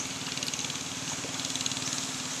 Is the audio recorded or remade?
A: recorded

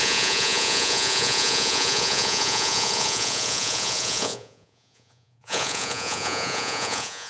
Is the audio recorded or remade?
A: remade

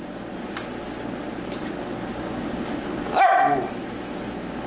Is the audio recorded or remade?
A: recorded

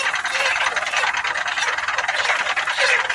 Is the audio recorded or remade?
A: recorded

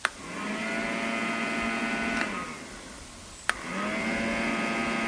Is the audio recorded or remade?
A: recorded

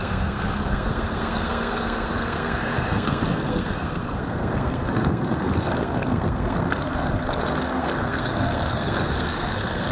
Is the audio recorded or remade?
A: remade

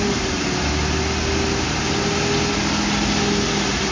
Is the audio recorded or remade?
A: recorded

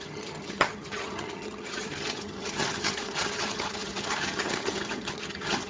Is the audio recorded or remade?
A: remade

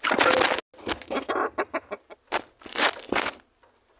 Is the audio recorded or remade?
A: recorded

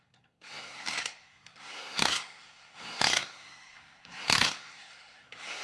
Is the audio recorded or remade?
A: remade